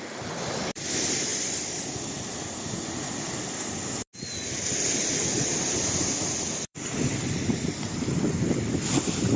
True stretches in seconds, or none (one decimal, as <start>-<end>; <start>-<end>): 1.3-6.0